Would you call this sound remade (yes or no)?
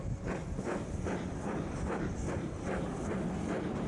no